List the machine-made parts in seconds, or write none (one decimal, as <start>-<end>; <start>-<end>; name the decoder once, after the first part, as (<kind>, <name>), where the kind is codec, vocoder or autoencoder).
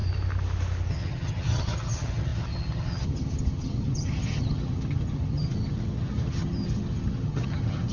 0.9-7.9 (vocoder, HiFi-GAN)